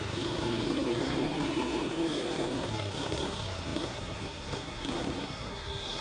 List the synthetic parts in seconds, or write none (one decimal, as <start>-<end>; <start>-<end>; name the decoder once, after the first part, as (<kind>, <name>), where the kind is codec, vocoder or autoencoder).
0.0-6.0 (codec, SNAC)

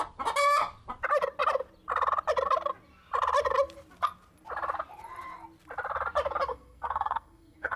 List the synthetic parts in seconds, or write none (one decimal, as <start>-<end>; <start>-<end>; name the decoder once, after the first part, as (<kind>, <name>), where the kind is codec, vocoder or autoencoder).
6.5-7.8 (codec, SNAC)

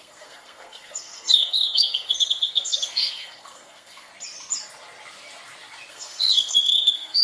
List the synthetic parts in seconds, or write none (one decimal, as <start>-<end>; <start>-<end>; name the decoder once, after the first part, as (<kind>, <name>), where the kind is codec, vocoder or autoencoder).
0.0-4.1 (codec, SNAC); 5.9-7.2

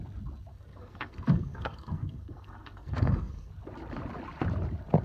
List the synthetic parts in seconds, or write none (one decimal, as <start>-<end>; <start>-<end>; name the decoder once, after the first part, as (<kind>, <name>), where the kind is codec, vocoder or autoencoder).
0.5-3.5 (codec, SNAC)

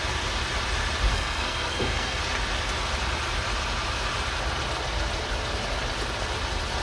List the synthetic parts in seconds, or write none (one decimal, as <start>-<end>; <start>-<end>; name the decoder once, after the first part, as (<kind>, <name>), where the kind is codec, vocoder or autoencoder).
1.1-2.2 (codec, SNAC)

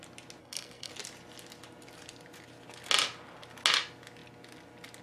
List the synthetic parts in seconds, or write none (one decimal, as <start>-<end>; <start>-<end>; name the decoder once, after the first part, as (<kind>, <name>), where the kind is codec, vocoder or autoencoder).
0.4-0.9 (codec, SNAC)